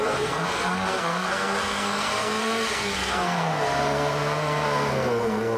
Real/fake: fake